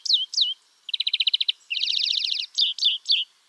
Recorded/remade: recorded